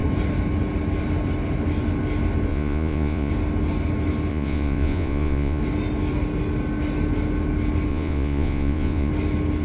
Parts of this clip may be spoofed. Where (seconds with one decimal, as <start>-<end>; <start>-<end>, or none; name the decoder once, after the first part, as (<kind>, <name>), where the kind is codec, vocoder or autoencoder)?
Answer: 2.5-3.3 (vocoder, Vocos); 4.3-5.6; 7.9-9.1